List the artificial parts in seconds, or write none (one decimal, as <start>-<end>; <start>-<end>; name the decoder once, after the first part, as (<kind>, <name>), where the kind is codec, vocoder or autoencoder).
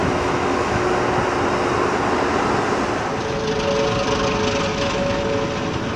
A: 0.0-0.8 (autoencoder, DAC-VAE); 4.7-5.2